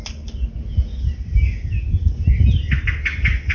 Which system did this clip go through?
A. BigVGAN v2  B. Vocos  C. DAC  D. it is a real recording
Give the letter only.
D